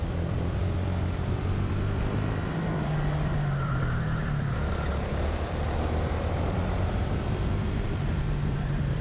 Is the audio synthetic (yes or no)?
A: yes